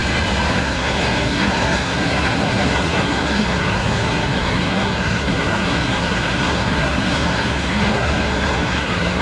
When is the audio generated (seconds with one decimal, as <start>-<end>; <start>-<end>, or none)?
0.5-9.2